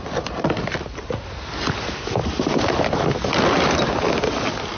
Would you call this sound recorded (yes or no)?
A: yes